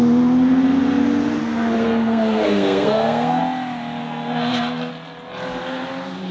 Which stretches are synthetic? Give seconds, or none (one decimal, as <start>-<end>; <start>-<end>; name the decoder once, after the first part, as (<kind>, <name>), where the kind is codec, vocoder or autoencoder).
1.4-3.4 (codec, SNAC); 4.0-4.9